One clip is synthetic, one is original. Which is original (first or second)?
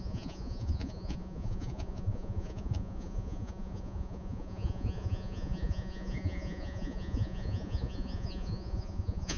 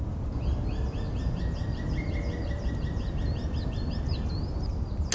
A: second